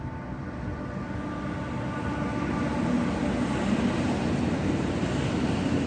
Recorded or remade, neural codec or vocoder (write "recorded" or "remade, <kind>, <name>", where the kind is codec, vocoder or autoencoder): recorded